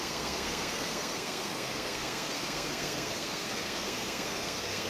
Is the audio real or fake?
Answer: fake